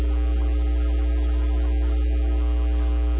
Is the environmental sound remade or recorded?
recorded